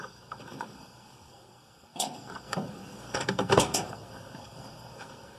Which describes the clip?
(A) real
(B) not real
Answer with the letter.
B